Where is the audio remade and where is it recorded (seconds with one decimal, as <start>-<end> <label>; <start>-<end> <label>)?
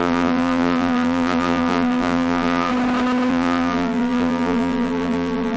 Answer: 0.0-2.7 remade; 2.7-3.3 recorded; 3.3-5.6 remade